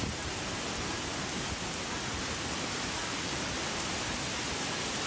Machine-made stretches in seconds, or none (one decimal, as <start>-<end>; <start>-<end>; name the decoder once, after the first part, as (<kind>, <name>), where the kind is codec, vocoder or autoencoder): 3.0-4.1 (vocoder, BigVGAN v2)